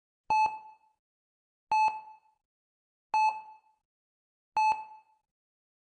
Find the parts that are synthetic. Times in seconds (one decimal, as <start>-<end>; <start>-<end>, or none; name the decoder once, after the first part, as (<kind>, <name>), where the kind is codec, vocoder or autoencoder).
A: none